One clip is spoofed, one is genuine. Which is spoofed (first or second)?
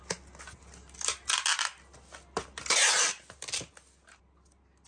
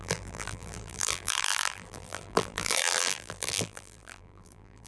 second